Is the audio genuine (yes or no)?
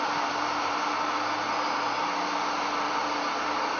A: yes